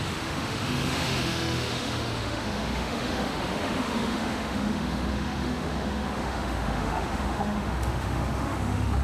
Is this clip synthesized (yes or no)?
yes